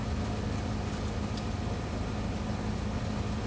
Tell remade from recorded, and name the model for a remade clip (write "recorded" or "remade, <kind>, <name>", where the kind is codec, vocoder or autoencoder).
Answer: recorded